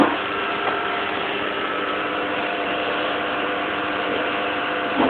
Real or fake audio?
fake